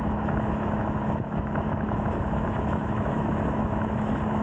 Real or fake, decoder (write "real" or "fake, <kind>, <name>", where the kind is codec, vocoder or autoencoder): fake, autoencoder, DAC-VAE